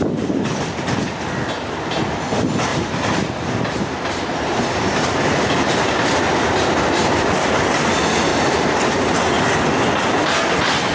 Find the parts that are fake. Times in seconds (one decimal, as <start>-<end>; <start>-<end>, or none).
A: 2.7-5.9; 8.3-9.2